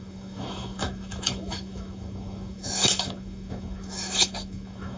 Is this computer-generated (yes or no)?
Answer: yes